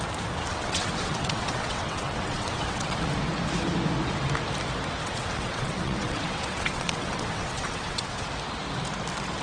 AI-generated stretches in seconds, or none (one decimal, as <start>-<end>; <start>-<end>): 0.5-3.1; 5.0-8.3